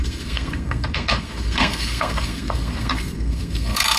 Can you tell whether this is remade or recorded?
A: remade